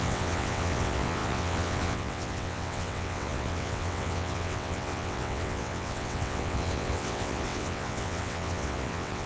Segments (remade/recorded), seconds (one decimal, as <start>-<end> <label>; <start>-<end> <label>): 0.0-9.3 remade